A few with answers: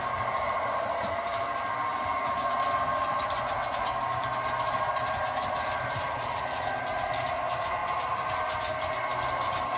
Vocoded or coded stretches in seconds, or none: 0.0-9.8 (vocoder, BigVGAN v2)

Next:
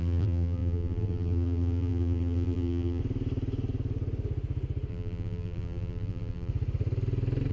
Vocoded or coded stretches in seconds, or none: 0.0-3.0 (vocoder, BigVGAN v2); 4.9-6.5

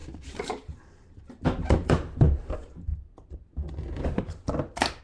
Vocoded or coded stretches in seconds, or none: 0.0-2.9 (vocoder, BigVGAN v2)